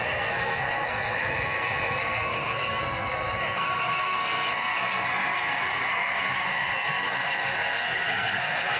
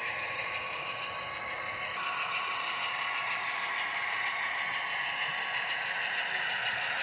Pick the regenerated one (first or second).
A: first